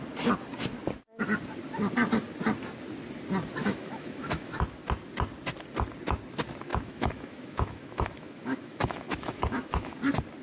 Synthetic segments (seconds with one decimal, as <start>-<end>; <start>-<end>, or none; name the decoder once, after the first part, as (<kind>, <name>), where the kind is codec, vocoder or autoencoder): 3.6-4.5 (autoencoder, DAC-VAE); 6.7-10.0